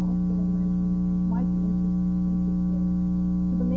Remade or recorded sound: recorded